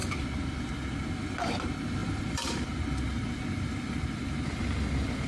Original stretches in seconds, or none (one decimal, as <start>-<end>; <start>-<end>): 0.0-2.0